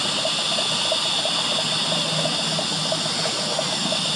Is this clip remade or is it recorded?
recorded